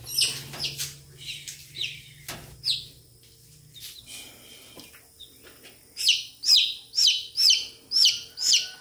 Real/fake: real